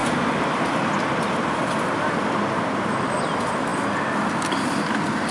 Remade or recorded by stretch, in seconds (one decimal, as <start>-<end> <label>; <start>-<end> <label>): 0.0-5.3 recorded